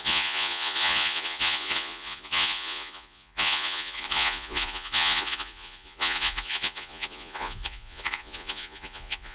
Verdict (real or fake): fake